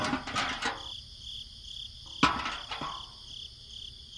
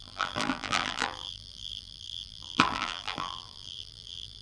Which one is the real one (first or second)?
first